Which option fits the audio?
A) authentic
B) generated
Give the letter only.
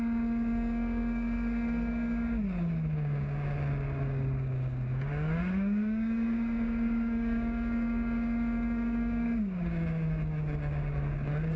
B